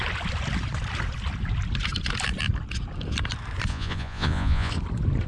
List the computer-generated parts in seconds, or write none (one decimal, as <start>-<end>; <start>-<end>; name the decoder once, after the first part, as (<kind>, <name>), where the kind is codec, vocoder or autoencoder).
3.7-4.7 (vocoder, Vocos)